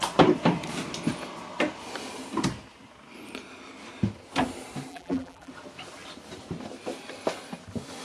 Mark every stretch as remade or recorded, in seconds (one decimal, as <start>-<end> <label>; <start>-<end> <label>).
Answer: 0.0-4.9 recorded; 4.9-5.5 remade; 5.5-8.0 recorded